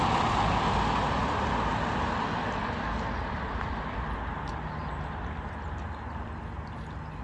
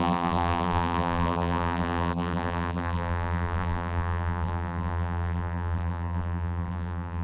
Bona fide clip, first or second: first